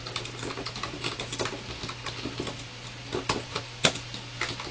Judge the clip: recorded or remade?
recorded